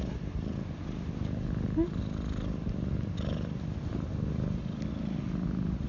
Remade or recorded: recorded